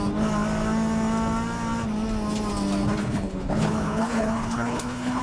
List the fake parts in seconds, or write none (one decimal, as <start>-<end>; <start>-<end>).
3.0-5.2